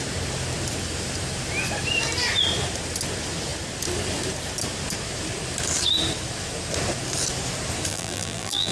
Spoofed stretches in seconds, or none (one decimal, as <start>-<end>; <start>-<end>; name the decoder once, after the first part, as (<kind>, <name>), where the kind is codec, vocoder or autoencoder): 7.9-8.7 (vocoder, BigVGAN v2)